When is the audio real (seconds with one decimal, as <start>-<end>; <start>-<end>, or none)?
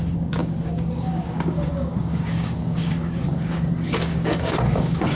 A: none